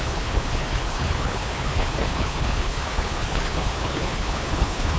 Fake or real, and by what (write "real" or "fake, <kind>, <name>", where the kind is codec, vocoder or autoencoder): fake, codec, HILCodec